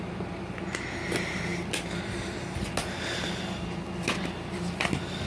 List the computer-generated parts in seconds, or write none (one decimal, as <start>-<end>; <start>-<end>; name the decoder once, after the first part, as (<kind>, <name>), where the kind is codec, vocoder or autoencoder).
none